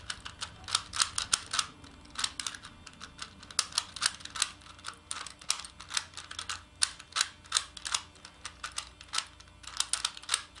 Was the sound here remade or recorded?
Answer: recorded